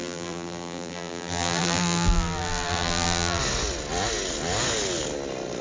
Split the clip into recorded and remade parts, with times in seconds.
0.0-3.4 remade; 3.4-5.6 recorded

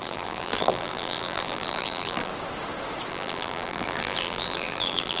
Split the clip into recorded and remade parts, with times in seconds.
0.0-2.3 remade; 2.3-3.1 recorded; 3.1-5.2 remade

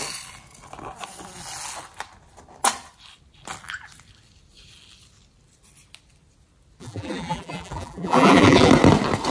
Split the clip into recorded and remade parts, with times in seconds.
0.0-6.8 recorded; 6.8-8.7 remade; 8.7-9.3 recorded